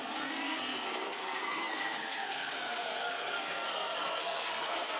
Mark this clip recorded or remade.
remade